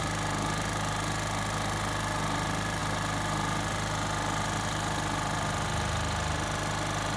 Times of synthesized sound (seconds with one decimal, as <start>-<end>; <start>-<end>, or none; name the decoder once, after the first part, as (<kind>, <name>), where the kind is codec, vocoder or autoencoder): none